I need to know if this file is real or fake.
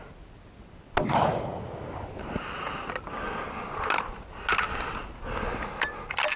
real